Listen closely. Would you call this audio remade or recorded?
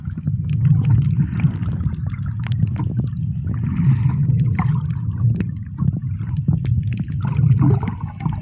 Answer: recorded